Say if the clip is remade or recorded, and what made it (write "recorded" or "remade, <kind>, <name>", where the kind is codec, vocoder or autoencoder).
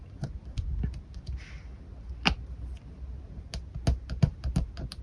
recorded